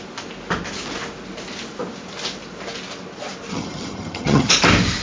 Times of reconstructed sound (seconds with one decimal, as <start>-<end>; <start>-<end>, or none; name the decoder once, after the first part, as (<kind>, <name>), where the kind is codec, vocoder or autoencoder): 3.5-4.5 (vocoder, HiFi-GAN)

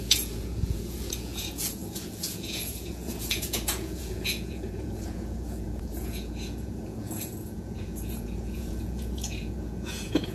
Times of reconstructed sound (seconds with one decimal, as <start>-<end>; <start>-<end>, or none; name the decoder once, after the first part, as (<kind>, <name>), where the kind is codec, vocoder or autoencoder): 0.0-10.3 (vocoder, Vocos)

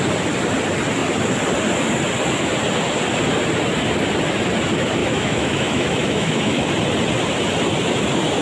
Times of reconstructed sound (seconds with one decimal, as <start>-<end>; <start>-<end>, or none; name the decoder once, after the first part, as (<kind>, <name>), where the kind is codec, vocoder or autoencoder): 5.0-6.7 (autoencoder, DAC-VAE)

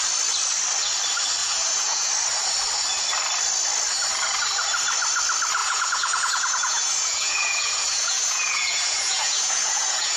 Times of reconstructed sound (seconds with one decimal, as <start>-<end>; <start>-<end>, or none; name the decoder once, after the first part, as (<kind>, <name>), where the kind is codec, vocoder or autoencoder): 1.4-2.1 (vocoder, Vocos); 5.6-10.2

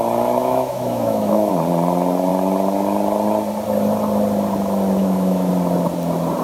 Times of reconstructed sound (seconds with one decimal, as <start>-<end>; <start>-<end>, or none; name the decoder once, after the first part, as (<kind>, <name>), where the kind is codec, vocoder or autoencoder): 0.4-1.5 (autoencoder, DAC-VAE); 5.0-5.5

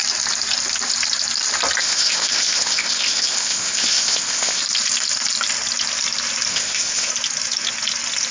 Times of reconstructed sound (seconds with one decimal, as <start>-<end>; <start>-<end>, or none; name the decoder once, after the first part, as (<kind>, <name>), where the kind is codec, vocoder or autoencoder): 1.8-4.6 (codec, ZipCodec); 6.5-7.1